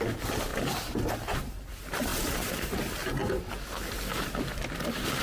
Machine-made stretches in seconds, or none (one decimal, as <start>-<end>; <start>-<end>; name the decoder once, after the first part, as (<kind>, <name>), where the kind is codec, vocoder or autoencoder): none